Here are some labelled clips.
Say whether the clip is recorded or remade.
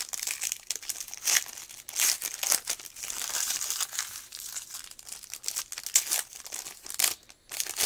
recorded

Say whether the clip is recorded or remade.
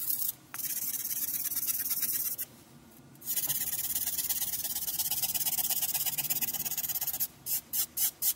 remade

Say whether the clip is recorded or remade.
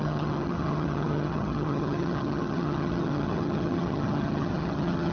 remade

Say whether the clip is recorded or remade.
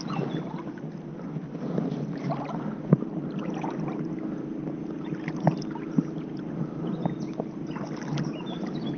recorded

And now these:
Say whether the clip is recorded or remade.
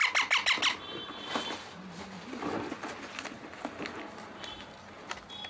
recorded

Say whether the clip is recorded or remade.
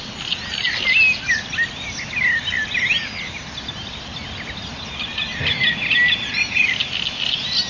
recorded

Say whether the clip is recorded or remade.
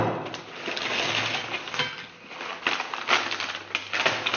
recorded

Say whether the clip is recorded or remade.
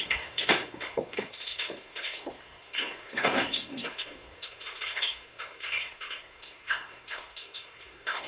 remade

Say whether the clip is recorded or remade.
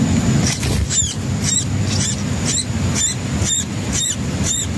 recorded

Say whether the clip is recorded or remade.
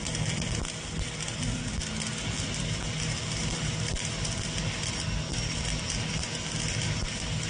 recorded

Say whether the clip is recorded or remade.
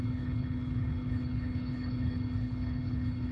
remade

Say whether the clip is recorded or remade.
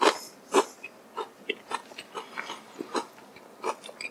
recorded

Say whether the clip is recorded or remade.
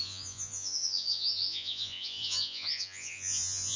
remade